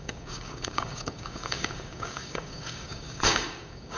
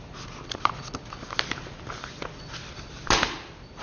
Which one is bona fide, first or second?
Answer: second